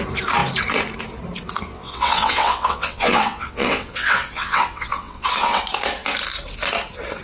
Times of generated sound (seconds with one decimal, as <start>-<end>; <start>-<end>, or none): 1.7-5.6